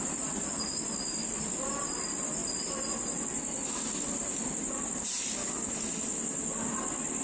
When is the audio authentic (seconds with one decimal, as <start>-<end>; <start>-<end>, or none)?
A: 0.0-7.2